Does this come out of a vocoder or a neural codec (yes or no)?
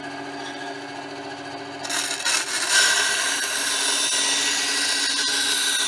no